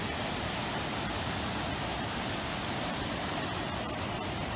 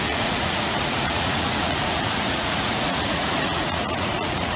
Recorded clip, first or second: first